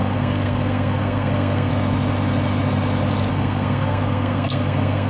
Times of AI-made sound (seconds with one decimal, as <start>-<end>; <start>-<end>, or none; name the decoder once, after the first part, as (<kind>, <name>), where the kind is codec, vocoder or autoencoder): 0.0-1.7 (codec, SNAC); 3.3-5.1